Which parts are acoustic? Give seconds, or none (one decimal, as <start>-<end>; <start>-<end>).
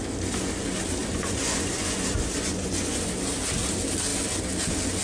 0.0-1.0; 3.1-5.0